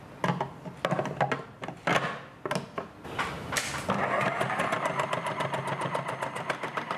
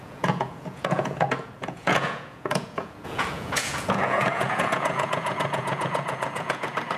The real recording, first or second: first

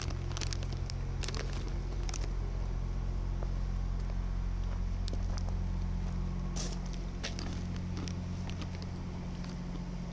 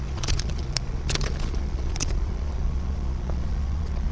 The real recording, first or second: first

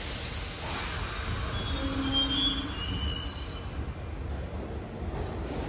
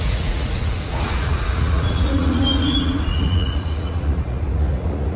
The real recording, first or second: first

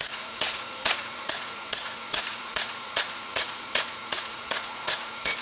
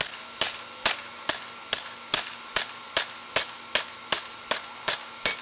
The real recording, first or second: second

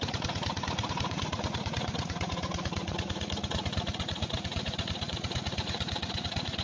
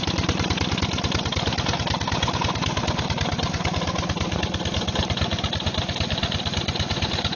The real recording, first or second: second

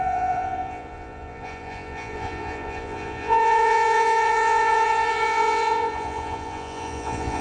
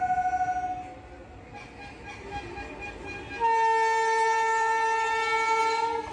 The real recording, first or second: second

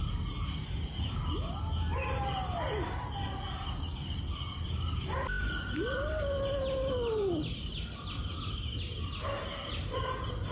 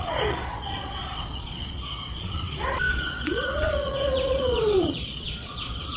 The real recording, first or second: first